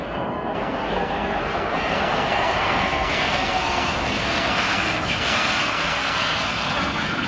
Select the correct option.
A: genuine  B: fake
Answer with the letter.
B